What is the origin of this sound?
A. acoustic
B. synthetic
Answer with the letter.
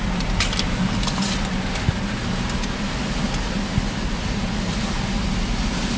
A